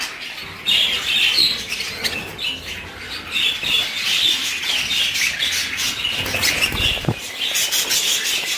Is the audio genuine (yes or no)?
yes